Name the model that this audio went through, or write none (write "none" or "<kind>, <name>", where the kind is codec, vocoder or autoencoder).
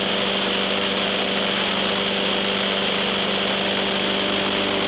none